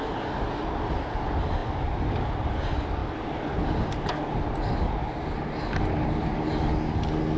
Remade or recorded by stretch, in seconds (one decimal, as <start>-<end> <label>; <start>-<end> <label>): 0.0-7.4 recorded